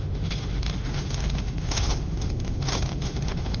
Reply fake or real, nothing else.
fake